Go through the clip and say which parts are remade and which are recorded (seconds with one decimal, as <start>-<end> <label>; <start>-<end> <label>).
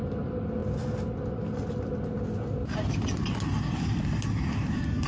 0.0-5.1 recorded